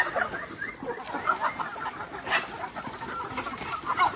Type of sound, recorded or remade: recorded